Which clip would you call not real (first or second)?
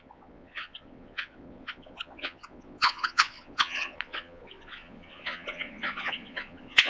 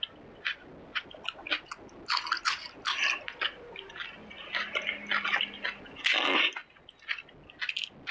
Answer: first